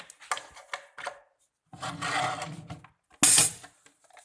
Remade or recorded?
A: recorded